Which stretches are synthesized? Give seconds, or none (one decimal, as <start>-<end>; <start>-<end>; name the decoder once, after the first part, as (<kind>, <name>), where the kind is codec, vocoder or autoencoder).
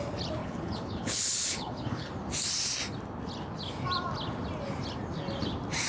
0.4-2.1 (codec, HILCodec)